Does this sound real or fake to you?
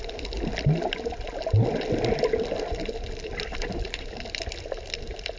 real